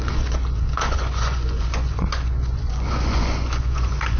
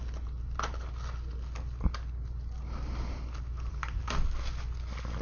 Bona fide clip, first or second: second